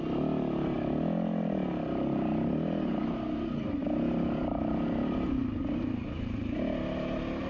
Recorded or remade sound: recorded